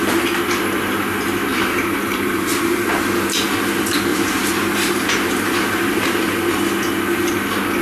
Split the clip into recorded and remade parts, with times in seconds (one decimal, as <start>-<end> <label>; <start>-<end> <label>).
0.0-1.5 recorded; 1.5-2.9 remade; 2.9-4.1 recorded; 4.1-6.0 remade; 6.0-7.8 recorded